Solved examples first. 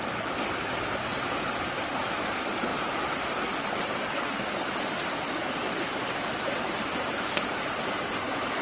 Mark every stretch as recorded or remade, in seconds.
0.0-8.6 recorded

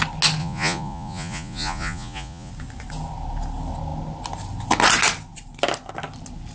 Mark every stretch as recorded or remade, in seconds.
0.0-0.4 recorded; 0.4-2.5 remade; 2.5-6.5 recorded

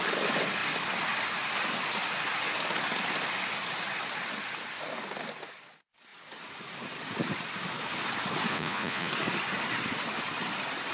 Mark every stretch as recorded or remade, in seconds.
0.0-8.5 recorded; 8.5-9.1 remade; 9.1-10.9 recorded